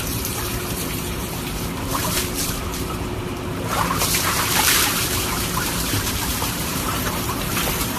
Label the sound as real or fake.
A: fake